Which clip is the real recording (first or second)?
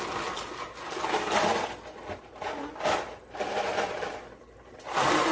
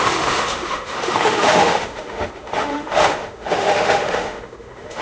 first